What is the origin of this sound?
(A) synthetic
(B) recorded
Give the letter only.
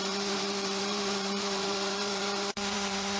A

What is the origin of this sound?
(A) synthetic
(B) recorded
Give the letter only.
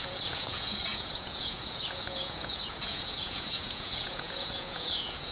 A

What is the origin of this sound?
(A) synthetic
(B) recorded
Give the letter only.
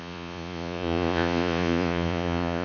A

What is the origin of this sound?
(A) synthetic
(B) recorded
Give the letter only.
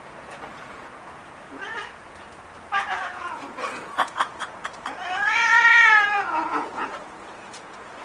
A